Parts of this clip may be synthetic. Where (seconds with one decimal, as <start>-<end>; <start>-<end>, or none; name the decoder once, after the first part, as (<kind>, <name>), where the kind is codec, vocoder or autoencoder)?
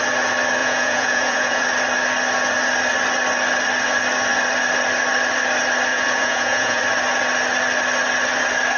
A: 0.6-1.6 (vocoder, Vocos); 5.9-6.8